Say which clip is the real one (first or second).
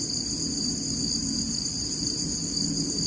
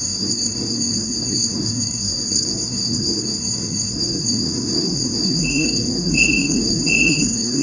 first